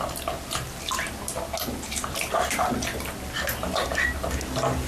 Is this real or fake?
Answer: real